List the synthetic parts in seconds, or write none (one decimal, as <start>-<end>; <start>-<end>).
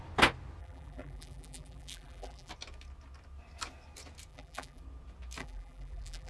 0.6-2.5; 4.3-4.8; 5.4-6.3